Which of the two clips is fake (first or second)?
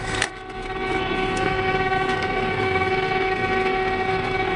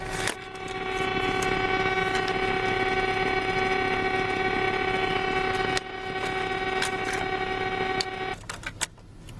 first